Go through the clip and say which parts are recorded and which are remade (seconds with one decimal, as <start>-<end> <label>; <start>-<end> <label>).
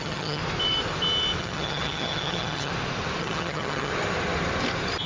0.0-0.4 remade; 0.4-1.4 recorded; 1.4-2.7 remade; 2.7-3.2 recorded; 3.2-3.9 remade; 3.9-5.1 recorded